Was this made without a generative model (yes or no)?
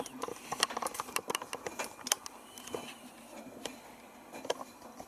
yes